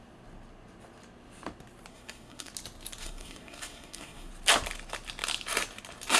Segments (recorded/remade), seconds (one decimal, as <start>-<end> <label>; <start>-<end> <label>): 0.0-1.9 recorded; 1.9-2.5 remade; 2.5-3.0 recorded; 3.0-4.3 remade; 4.3-6.2 recorded